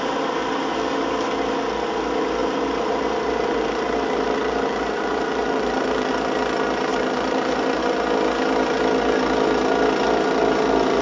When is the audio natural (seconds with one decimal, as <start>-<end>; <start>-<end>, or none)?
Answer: 0.0-2.4; 6.1-6.9; 7.8-11.0

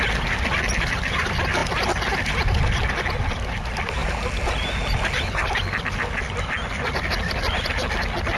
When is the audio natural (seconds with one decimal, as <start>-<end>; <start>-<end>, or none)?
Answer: 0.0-8.4

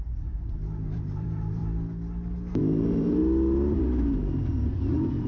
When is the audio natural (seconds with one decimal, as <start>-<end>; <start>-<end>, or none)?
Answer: 1.6-2.6; 3.2-3.8

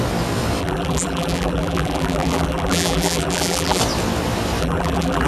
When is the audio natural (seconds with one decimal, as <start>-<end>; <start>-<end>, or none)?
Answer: 0.0-0.6; 3.8-4.6

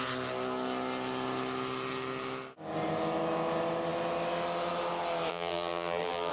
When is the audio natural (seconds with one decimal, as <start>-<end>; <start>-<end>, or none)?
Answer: 0.0-5.3